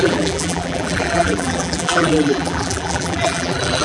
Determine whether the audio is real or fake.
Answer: fake